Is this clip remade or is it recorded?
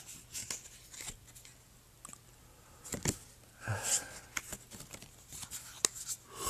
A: recorded